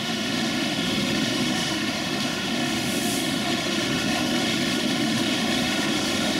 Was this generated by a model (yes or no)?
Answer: yes